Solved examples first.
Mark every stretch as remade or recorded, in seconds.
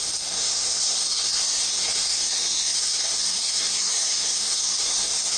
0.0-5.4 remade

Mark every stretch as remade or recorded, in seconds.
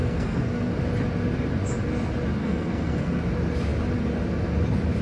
0.0-0.7 remade; 0.7-2.4 recorded; 2.4-3.2 remade; 3.2-5.0 recorded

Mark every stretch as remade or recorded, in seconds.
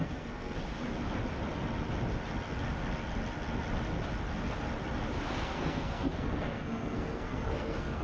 0.0-0.6 remade; 0.6-5.3 recorded; 5.3-8.0 remade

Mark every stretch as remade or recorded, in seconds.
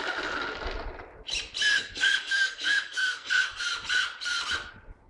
0.0-1.7 recorded; 1.7-3.6 remade; 3.6-5.1 recorded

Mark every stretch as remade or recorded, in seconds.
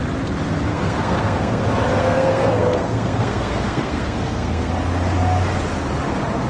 0.0-0.7 recorded; 0.7-1.6 remade; 1.6-2.0 recorded; 2.0-4.7 remade; 4.7-6.5 recorded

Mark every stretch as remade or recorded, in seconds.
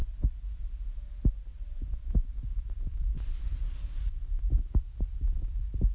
0.0-3.4 recorded; 3.4-4.0 remade; 4.0-5.9 recorded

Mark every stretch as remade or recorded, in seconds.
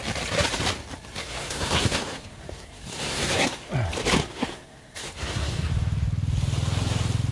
0.0-1.2 recorded; 1.2-3.7 remade; 3.7-4.2 recorded; 4.2-5.7 remade; 5.7-7.3 recorded